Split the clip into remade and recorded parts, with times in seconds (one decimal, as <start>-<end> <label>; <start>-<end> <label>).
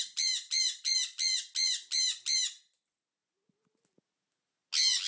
0.0-5.1 recorded